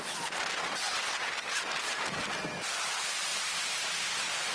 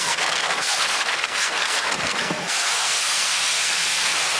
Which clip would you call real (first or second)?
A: first